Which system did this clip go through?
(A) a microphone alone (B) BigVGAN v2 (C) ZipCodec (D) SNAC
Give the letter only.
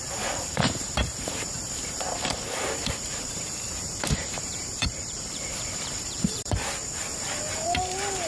B